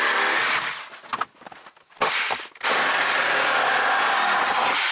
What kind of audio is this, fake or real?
real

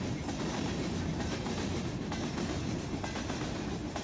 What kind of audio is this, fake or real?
real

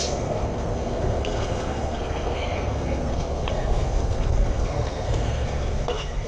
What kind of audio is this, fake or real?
fake